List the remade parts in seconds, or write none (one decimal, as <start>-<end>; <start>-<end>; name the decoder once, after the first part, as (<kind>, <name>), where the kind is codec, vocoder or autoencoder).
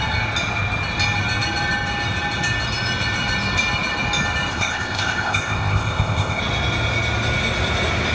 4.5-6.4 (codec, ZipCodec)